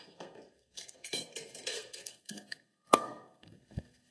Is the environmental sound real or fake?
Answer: fake